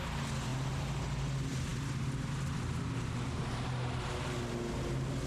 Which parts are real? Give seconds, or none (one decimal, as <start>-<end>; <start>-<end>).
0.0-5.3